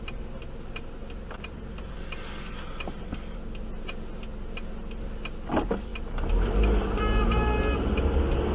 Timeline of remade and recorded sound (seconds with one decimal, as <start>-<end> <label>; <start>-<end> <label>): 0.0-8.5 recorded